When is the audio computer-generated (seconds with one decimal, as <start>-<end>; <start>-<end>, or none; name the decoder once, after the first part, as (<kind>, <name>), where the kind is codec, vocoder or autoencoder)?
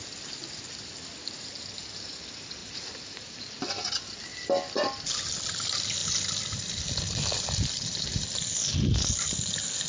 1.2-2.2 (vocoder, BigVGAN v2); 2.6-3.5